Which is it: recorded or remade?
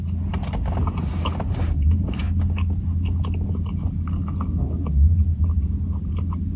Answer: recorded